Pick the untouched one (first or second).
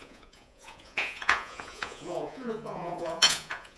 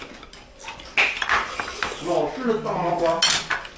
second